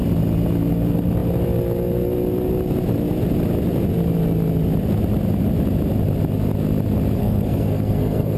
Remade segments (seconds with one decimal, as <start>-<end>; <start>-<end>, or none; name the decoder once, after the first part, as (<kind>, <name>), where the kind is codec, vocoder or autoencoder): 7.2-8.4 (codec, SNAC)